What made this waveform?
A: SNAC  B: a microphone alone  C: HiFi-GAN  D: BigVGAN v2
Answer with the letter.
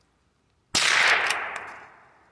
B